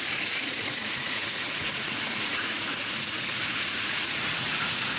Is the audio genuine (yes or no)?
no